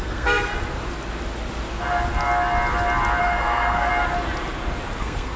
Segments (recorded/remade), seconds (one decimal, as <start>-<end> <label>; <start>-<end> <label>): 0.0-0.5 remade; 0.5-3.2 recorded; 3.2-3.9 remade; 3.9-5.0 recorded; 5.0-5.4 remade